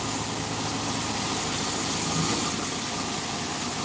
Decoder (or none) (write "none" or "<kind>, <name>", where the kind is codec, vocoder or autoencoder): none